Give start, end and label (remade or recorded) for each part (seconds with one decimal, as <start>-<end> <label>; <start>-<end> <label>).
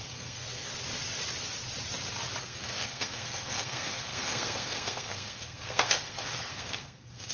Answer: 0.0-0.7 remade; 0.7-2.4 recorded; 2.4-7.3 remade